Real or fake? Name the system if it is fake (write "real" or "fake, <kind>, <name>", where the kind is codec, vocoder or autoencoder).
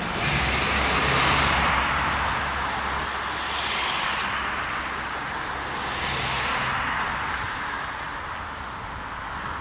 real